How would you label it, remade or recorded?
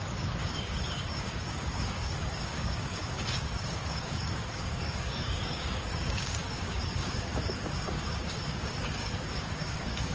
remade